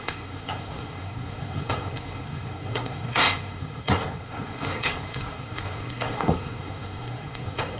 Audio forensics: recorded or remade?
remade